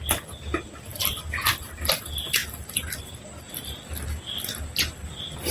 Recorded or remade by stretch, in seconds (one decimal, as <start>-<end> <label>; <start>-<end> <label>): 0.0-5.5 recorded

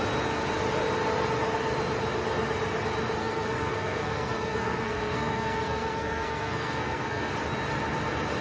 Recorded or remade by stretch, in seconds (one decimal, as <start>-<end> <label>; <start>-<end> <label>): 0.0-3.2 recorded; 3.2-7.3 remade; 7.3-8.4 recorded

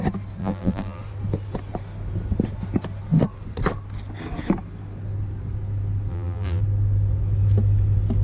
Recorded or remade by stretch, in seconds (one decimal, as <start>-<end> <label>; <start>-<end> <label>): 0.0-0.4 recorded; 0.4-1.0 remade; 1.0-6.1 recorded; 6.1-6.6 remade; 6.6-8.2 recorded

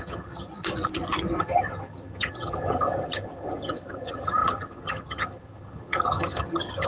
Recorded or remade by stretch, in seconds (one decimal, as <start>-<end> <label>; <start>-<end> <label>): 0.0-0.5 remade; 0.5-1.4 recorded; 1.4-6.9 remade

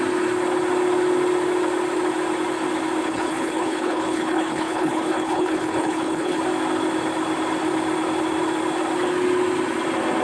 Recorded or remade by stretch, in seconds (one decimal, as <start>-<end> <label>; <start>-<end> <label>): 0.0-3.0 recorded; 3.0-6.4 remade; 6.4-10.2 recorded

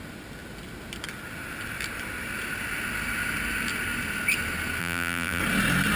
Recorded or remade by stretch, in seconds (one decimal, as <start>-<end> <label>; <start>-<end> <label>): 0.0-4.8 recorded; 4.8-5.4 remade; 5.4-6.0 recorded